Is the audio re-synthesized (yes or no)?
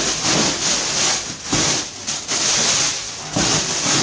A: no